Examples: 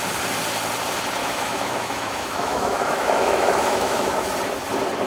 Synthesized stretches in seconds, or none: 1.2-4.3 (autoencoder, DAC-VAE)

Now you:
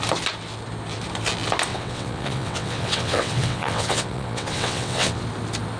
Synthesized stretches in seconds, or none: 1.7-5.2 (vocoder, WaveNeXt)

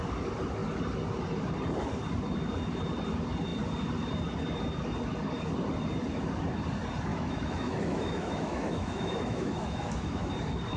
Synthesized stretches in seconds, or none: 7.1-10.3 (autoencoder, DAC-VAE)

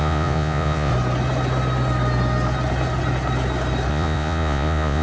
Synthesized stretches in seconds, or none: 0.0-0.9 (vocoder, Vocos); 3.9-5.0